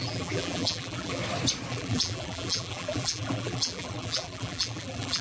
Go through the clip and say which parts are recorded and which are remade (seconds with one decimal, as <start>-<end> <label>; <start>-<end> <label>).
0.0-1.2 remade; 1.2-1.7 recorded; 1.7-5.2 remade

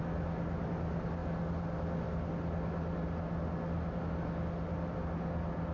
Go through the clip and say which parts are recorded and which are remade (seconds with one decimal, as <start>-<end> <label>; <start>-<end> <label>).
0.0-5.7 recorded

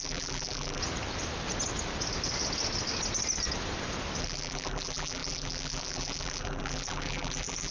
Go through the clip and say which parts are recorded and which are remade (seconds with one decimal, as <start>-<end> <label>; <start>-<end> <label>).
0.0-0.8 remade; 0.8-4.2 recorded; 4.2-7.7 remade

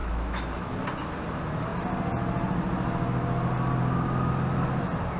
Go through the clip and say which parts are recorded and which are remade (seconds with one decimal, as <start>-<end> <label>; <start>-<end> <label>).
0.0-0.7 remade; 0.7-5.2 recorded

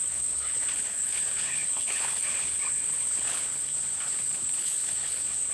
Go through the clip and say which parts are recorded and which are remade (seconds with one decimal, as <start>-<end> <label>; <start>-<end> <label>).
0.0-5.5 remade

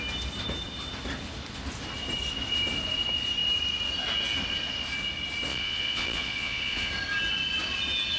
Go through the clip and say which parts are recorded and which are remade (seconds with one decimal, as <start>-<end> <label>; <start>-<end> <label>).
0.0-5.5 recorded; 5.5-6.9 remade; 6.9-8.2 recorded

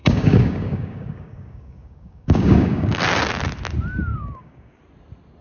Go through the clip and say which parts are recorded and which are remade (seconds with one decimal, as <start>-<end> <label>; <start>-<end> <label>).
0.0-3.0 remade; 3.0-4.1 recorded; 4.1-4.8 remade; 4.8-5.4 recorded